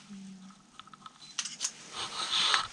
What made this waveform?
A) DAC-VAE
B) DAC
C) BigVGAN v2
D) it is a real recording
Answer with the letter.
D